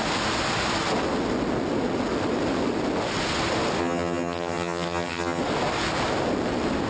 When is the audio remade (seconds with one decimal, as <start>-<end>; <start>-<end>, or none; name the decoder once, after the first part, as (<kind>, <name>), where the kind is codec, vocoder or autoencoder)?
3.8-5.4 (vocoder, HiFi-GAN)